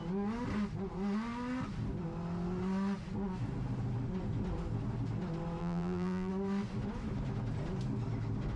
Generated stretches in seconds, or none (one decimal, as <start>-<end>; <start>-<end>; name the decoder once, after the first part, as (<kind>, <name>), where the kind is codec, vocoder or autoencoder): 5.6-6.3 (vocoder, BigVGAN v2)